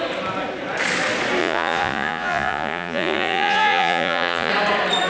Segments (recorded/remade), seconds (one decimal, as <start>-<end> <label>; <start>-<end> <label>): 0.0-1.4 recorded; 1.4-4.5 remade; 4.5-5.1 recorded